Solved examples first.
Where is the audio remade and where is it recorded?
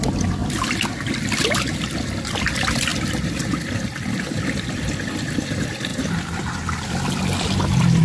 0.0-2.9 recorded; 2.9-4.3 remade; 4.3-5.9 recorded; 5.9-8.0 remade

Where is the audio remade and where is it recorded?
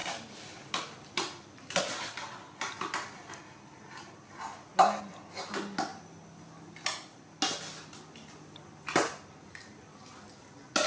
0.0-10.9 recorded